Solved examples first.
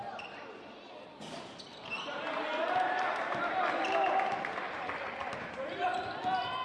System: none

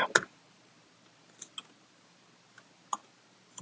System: none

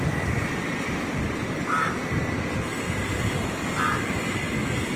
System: none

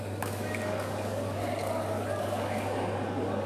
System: codec, DAC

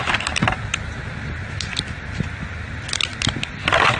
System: none